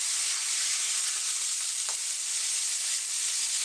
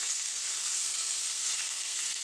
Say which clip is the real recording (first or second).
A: first